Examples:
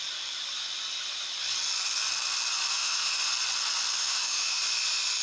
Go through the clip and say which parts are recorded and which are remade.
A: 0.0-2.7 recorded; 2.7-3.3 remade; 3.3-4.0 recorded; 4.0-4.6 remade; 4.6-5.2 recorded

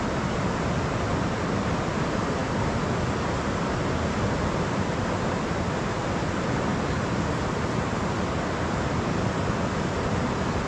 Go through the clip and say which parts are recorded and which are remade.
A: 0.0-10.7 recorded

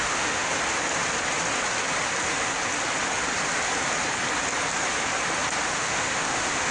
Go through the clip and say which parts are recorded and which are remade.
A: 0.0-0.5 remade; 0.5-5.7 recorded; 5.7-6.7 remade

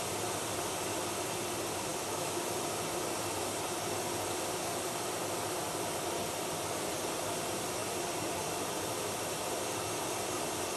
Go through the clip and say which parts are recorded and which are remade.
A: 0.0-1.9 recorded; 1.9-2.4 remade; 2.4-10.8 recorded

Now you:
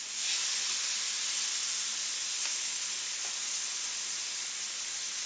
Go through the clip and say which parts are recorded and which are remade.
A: 0.0-5.3 recorded